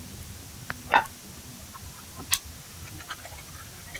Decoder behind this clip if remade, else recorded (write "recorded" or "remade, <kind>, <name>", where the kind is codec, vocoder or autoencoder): recorded